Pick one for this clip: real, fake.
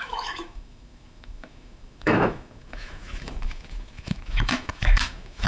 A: fake